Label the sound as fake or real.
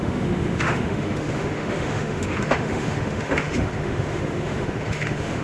fake